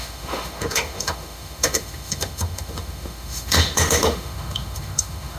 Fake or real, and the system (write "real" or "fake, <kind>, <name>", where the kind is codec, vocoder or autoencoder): fake, autoencoder, DAC-VAE